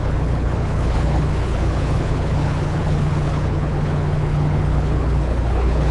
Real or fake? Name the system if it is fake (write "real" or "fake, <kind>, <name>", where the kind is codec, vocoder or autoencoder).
fake, codec, HILCodec